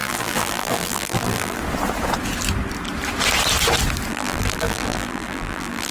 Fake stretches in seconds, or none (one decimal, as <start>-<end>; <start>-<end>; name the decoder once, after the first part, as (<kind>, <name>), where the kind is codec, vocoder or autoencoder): 0.0-1.6 (vocoder, BigVGAN v2); 4.1-5.9